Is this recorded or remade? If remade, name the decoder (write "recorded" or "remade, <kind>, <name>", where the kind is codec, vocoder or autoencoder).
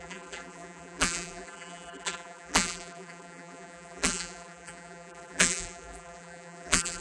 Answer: remade, vocoder, BigVGAN v2